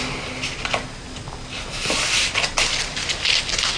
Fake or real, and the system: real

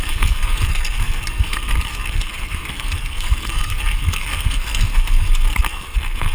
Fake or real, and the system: fake, codec, SNAC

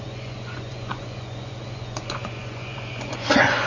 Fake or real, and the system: fake, vocoder, Vocos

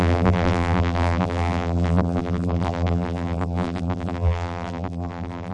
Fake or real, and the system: fake, vocoder, BigVGAN v2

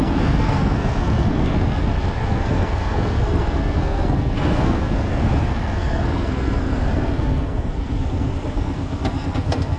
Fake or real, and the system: fake, codec, SNAC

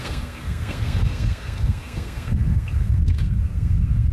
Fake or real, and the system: fake, codec, SNAC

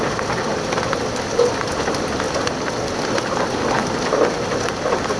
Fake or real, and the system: real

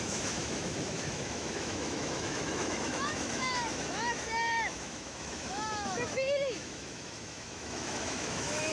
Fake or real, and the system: fake, autoencoder, DAC-VAE